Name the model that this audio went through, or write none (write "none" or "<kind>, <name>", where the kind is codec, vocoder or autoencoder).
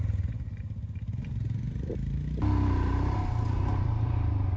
none